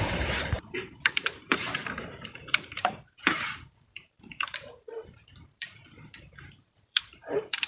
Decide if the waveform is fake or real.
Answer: fake